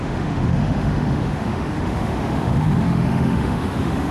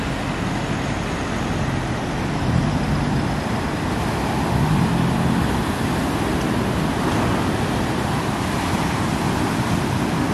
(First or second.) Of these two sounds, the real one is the second